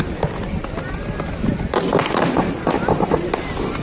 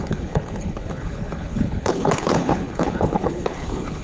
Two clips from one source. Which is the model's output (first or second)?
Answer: second